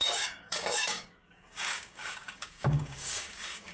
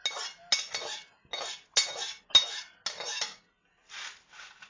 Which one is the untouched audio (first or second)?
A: second